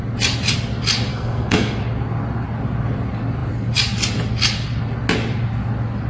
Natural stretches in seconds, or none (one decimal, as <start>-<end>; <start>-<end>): 0.0-1.1; 1.8-6.1